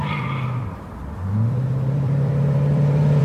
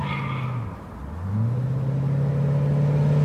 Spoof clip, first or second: first